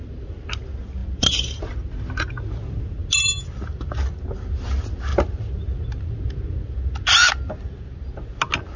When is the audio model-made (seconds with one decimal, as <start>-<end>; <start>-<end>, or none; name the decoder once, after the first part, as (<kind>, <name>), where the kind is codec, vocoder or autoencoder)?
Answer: 0.0-0.5 (vocoder, BigVGAN v2); 1.0-1.8; 5.1-6.8